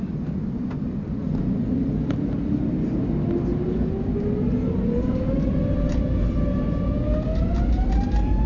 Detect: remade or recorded recorded